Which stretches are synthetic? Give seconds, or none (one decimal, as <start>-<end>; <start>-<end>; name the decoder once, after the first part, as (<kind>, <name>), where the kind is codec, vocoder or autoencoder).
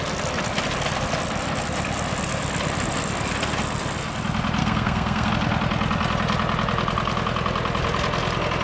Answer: 4.6-5.3 (codec, SNAC)